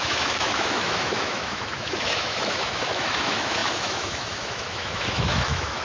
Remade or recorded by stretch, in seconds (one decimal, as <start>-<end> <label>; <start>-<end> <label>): 0.0-5.8 remade